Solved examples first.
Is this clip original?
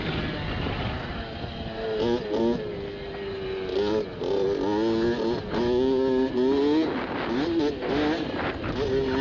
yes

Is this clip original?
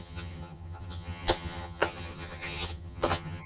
no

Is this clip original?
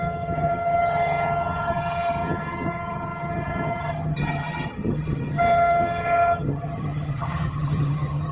no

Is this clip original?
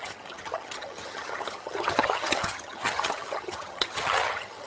no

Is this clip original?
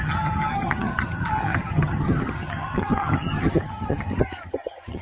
no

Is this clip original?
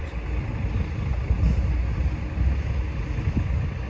yes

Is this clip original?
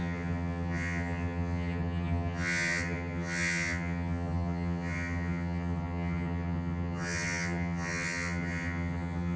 no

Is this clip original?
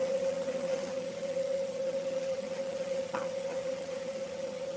no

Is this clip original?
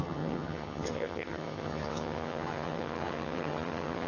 no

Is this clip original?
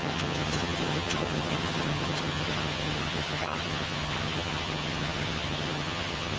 no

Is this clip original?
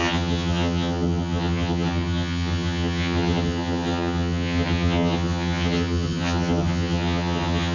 no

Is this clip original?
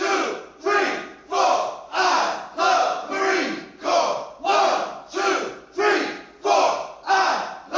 yes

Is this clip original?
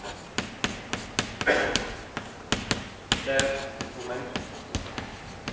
yes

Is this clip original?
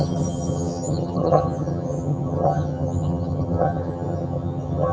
no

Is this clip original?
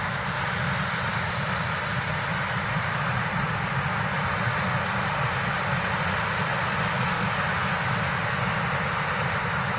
yes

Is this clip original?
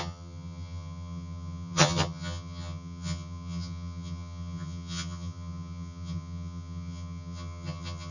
no